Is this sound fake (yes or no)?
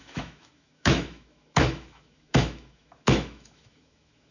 yes